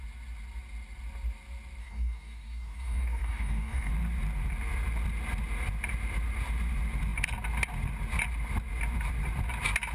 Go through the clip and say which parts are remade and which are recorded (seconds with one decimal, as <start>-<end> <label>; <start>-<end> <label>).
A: 0.0-1.8 recorded; 1.8-3.9 remade; 3.9-9.9 recorded